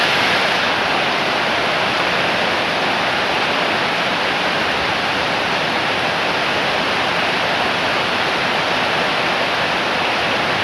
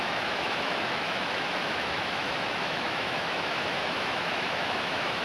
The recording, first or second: first